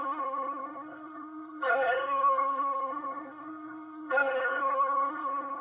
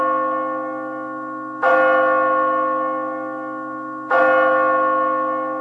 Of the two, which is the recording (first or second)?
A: second